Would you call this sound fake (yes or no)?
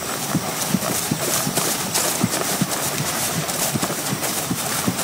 yes